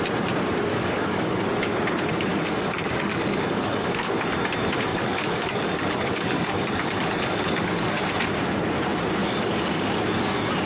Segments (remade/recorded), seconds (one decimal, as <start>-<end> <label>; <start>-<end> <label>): 0.0-0.7 recorded; 0.7-1.4 remade; 1.4-2.3 recorded; 2.3-4.2 remade; 4.2-4.9 recorded; 4.9-8.1 remade; 8.1-9.2 recorded; 9.2-9.9 remade; 9.9-10.7 recorded

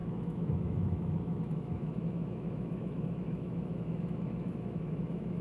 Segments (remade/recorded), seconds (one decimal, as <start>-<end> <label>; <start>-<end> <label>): 0.0-5.4 remade